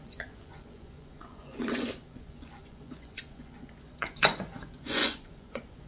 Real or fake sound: fake